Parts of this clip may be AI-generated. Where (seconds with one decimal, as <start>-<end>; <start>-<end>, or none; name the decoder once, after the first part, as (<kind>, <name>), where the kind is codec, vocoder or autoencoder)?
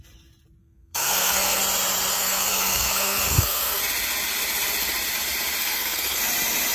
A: 0.6-1.6 (codec, SNAC); 2.1-3.8; 5.6-6.2